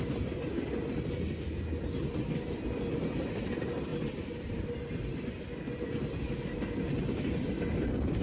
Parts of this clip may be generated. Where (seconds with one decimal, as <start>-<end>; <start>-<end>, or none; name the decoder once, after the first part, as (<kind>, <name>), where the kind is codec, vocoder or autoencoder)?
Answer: none